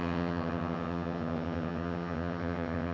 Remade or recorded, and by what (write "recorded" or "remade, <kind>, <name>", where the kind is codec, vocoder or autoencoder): remade, vocoder, HiFi-GAN